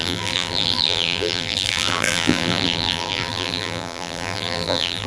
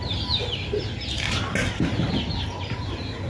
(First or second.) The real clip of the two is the second